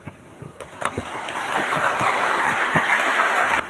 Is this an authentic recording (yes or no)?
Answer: no